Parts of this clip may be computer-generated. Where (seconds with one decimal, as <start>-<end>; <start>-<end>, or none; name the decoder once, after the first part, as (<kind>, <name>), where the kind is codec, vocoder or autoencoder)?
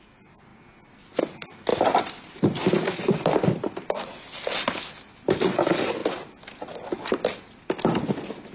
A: 1.7-5.0 (vocoder, BigVGAN v2); 6.0-7.6